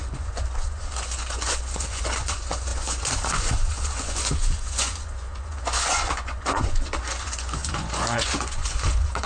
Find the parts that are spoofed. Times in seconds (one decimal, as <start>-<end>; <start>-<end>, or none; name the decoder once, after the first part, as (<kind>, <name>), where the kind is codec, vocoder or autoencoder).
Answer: 0.0-9.3 (vocoder, Vocos)